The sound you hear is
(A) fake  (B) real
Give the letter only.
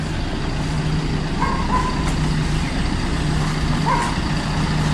B